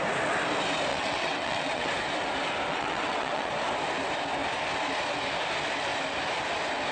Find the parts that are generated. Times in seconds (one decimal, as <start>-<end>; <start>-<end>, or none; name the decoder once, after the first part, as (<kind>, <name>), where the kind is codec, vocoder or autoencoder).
0.9-1.9 (vocoder, WaveNeXt); 2.7-3.5